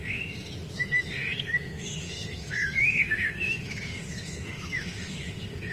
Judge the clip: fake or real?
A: fake